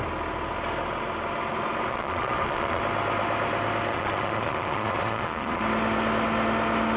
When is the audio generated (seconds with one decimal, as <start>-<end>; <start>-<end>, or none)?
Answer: 1.9-2.8; 3.9-5.6